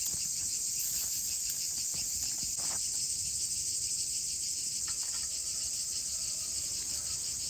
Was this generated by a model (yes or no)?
no